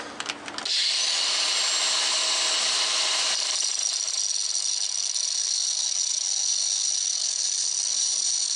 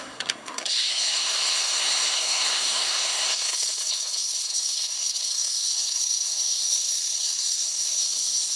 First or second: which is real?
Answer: first